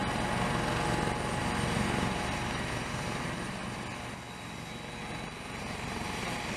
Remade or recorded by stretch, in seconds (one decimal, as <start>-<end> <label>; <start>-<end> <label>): 0.0-1.4 recorded; 1.4-3.6 remade; 3.6-5.6 recorded; 5.6-6.6 remade